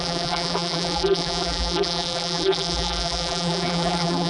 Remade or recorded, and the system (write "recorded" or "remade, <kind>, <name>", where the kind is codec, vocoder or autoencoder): remade, vocoder, BigVGAN v2